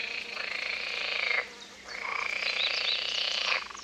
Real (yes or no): yes